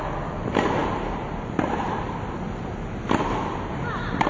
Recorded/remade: recorded